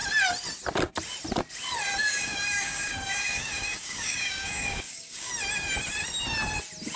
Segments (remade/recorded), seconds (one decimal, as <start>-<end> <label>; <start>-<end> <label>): 0.0-2.0 recorded; 2.0-5.3 remade; 5.3-7.0 recorded